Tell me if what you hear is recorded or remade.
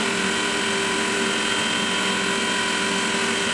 recorded